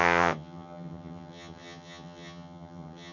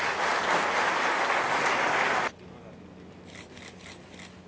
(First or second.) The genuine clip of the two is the second